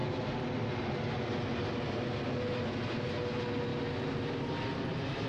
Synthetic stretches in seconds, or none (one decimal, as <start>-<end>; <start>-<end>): none